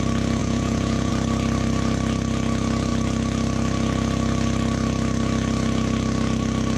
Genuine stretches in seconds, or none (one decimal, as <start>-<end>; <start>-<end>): 0.0-0.4; 1.1-6.8